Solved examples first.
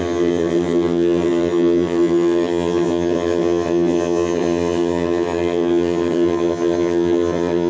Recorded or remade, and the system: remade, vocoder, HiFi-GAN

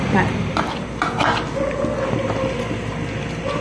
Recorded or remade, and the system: recorded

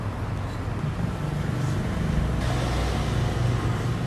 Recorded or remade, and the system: recorded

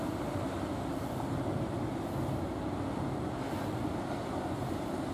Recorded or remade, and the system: recorded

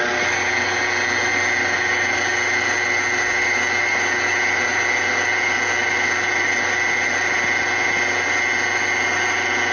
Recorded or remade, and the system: recorded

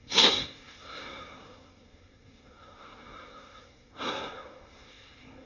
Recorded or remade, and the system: remade, codec, SNAC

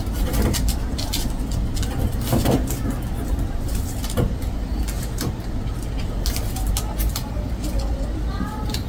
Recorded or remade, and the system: recorded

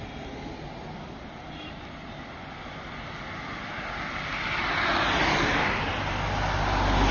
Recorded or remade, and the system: recorded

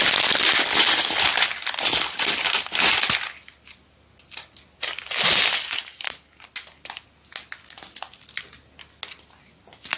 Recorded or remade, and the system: recorded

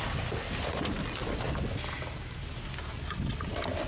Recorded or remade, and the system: recorded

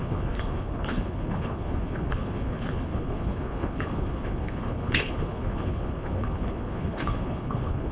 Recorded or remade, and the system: remade, codec, HILCodec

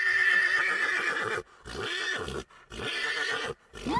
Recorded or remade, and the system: recorded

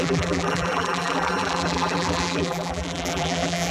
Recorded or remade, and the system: remade, vocoder, BigVGAN v2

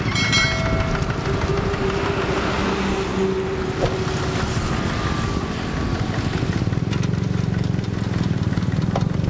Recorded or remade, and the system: recorded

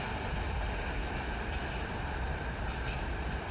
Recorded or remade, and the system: recorded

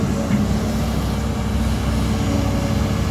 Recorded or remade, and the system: recorded